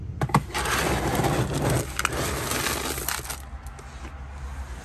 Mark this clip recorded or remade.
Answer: recorded